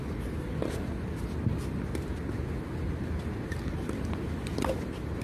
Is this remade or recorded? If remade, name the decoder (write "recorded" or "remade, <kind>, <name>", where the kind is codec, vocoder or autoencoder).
recorded